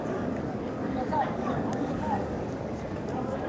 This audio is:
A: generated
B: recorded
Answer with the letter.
A